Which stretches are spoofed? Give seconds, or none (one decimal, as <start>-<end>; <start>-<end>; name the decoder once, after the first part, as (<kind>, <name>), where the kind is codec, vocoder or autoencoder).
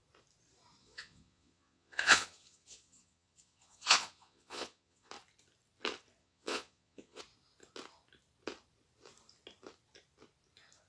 0.8-5.1 (vocoder, Vocos); 6.2-7.2